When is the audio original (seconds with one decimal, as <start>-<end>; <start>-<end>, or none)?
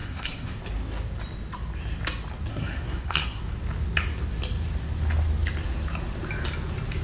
0.6-2.5; 3.4-7.0